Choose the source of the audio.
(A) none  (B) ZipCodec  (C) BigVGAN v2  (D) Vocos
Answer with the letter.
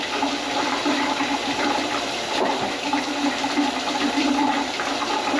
C